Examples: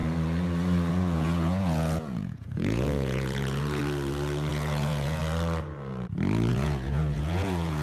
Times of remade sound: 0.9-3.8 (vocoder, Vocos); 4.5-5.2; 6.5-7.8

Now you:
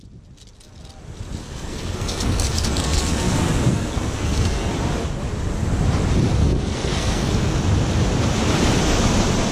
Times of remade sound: 1.4-4.7 (codec, SNAC); 6.4-7.6

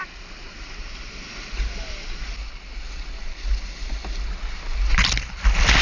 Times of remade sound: none

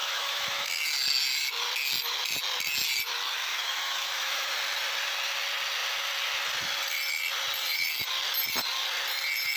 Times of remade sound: 0.0-0.7 (autoencoder, DAC-VAE); 3.5-4.5

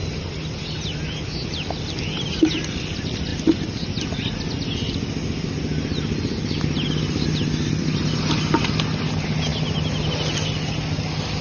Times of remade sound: none

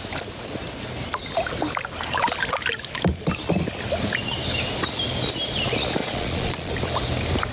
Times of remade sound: 6.0-6.7 (vocoder, Vocos)

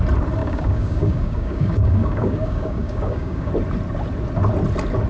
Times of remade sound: 0.4-3.5 (codec, DAC)